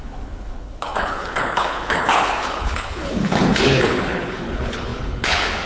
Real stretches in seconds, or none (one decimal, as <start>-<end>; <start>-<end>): none